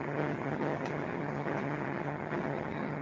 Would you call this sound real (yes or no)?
no